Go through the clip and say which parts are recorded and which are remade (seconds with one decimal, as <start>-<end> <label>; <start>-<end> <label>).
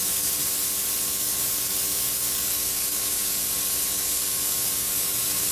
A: 0.0-0.4 remade; 0.4-1.0 recorded; 1.0-5.5 remade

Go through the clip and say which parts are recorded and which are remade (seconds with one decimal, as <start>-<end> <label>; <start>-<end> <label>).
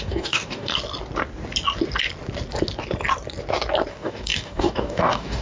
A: 0.0-0.7 remade; 0.7-3.9 recorded; 3.9-5.4 remade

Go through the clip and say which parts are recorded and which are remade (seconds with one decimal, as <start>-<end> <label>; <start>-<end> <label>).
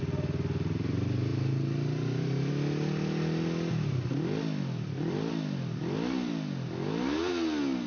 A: 0.0-7.9 recorded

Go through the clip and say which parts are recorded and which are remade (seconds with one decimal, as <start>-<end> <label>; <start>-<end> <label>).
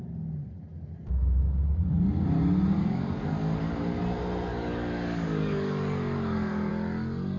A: 0.0-2.8 recorded; 2.8-4.0 remade; 4.0-4.5 recorded; 4.5-6.7 remade; 6.7-7.4 recorded